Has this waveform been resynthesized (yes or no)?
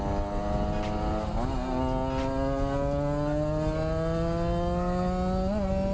no